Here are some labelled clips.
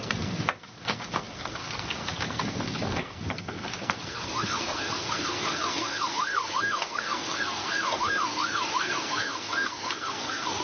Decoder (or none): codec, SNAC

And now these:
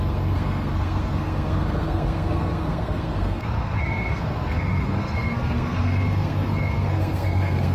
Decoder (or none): codec, SNAC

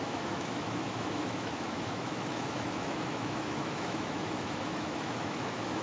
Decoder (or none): autoencoder, DAC-VAE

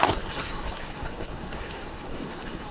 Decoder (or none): codec, SNAC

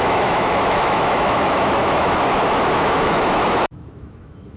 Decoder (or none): autoencoder, DAC-VAE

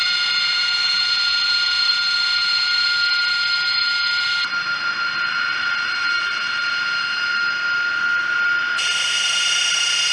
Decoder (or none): vocoder, BigVGAN v2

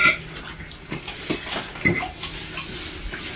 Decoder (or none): none